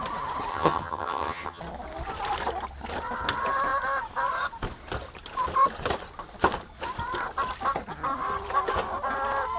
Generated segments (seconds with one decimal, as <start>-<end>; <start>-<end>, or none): 0.5-1.6